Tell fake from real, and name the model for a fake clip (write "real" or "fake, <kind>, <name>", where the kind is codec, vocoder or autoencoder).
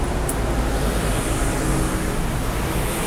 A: real